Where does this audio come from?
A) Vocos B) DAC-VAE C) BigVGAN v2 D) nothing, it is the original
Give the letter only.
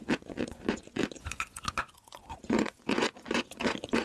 A